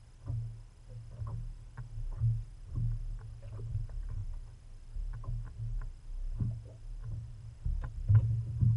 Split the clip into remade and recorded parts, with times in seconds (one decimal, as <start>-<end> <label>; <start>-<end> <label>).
0.0-8.8 recorded

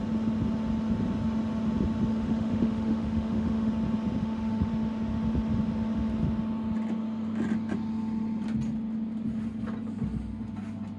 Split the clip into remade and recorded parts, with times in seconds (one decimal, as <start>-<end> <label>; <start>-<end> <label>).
0.0-2.1 recorded; 2.1-3.7 remade; 3.7-4.2 recorded; 4.2-4.7 remade; 4.7-11.0 recorded